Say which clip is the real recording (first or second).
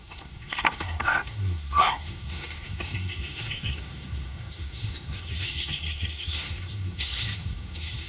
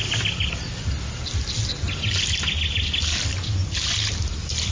second